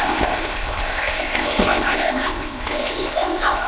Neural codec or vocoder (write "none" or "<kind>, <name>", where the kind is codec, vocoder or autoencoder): codec, ZipCodec